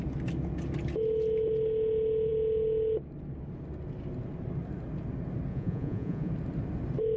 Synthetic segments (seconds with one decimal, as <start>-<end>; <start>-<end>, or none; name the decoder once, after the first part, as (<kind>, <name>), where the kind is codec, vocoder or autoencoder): 5.5-6.3 (vocoder, Vocos)